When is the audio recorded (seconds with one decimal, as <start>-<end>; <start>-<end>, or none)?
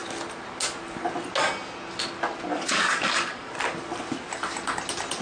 0.0-2.5; 3.5-5.2